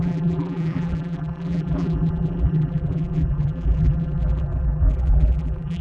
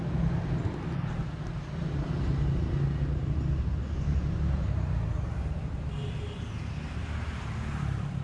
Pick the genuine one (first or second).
second